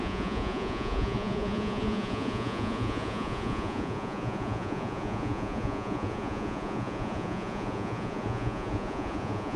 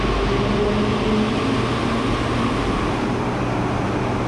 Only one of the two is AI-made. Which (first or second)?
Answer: first